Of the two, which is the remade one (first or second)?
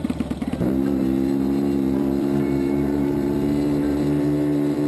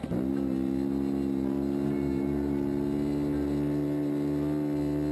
first